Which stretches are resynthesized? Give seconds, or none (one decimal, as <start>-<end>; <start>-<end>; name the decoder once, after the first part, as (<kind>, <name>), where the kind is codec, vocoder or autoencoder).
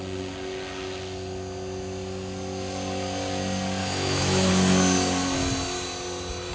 3.8-4.5 (autoencoder, DAC-VAE)